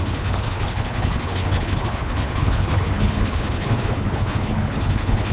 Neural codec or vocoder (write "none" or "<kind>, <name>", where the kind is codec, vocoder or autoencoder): codec, HILCodec